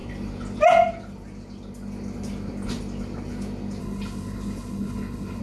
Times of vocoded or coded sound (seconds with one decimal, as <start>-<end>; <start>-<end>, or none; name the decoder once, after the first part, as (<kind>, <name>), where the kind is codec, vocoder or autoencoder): 3.8-5.4 (codec, HILCodec)